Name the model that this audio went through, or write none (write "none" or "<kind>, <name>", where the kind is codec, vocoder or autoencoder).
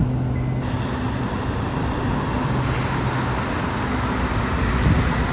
none